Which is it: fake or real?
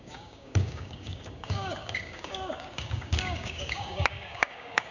fake